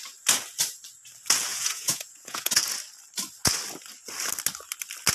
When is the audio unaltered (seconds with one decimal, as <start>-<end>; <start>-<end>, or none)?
0.0-1.5; 2.6-5.1